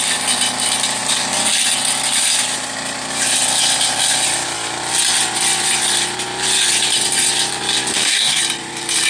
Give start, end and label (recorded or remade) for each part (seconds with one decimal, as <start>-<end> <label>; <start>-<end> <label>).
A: 0.0-7.9 recorded; 7.9-8.4 remade; 8.4-9.1 recorded